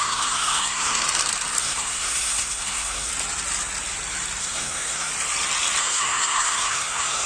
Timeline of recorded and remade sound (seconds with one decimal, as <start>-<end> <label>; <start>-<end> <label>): 0.0-1.0 remade; 1.0-1.6 recorded; 1.6-3.1 remade; 3.1-4.4 recorded; 4.4-5.1 remade; 5.1-5.8 recorded; 5.8-7.3 remade